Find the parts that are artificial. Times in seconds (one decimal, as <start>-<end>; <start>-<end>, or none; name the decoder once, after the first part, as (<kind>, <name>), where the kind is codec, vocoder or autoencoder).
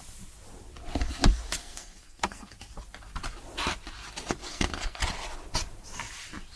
1.6-2.5 (codec, SNAC); 4.4-5.0